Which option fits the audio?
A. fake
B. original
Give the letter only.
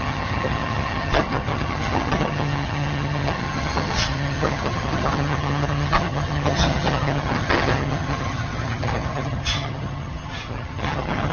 A